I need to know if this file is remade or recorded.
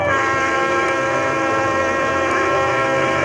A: remade